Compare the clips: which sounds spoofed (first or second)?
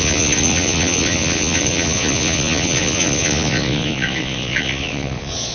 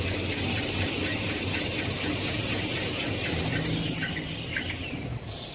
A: first